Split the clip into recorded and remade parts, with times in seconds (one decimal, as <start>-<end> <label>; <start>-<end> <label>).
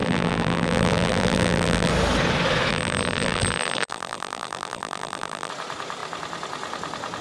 0.0-1.9 remade; 1.9-2.7 recorded; 2.7-5.5 remade; 5.5-7.2 recorded